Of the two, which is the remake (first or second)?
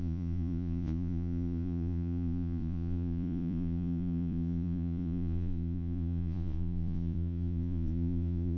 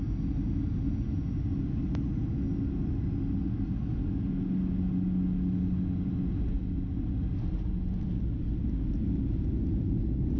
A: first